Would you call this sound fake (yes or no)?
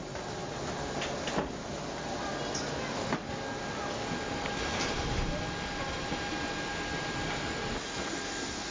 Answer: no